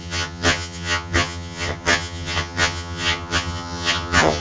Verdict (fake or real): fake